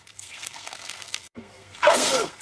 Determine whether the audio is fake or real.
fake